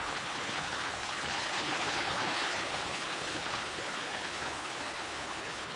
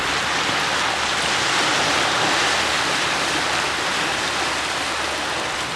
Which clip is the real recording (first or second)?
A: second